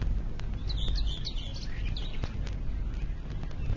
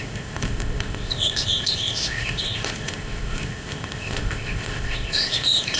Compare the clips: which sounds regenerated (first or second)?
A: second